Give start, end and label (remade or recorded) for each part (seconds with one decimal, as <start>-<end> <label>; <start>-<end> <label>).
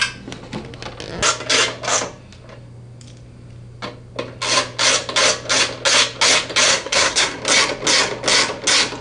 0.0-6.7 recorded; 6.7-7.4 remade; 7.4-9.0 recorded